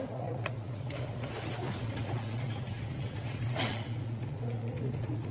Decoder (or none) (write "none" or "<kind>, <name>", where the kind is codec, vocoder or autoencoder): vocoder, Vocos